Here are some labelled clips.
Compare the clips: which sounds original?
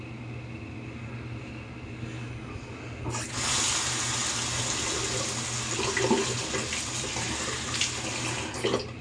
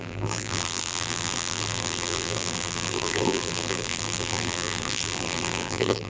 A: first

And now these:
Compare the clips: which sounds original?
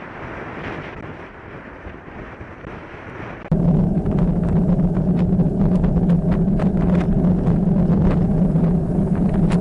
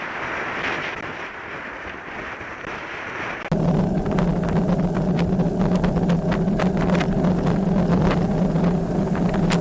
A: second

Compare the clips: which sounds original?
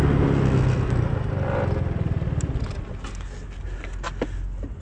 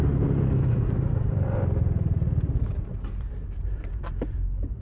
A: first